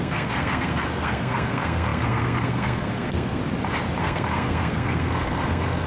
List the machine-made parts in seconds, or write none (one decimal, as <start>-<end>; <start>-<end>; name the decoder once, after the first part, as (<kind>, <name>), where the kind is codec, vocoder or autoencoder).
0.0-3.4 (codec, SNAC); 4.0-5.9